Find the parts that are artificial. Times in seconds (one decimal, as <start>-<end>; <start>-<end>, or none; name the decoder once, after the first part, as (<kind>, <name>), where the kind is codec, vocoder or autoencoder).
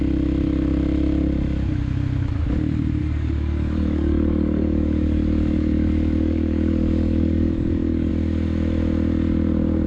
3.0-8.1 (codec, DAC)